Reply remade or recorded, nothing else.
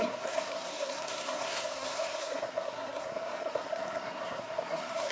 remade